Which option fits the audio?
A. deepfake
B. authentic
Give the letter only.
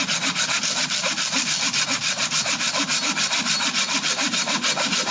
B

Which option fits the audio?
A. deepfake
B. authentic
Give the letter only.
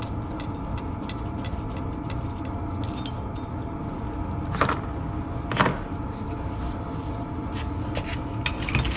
B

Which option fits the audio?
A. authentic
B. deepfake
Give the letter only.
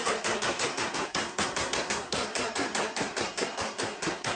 B